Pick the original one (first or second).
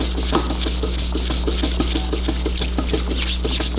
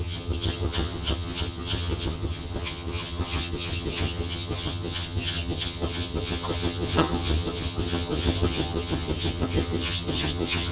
first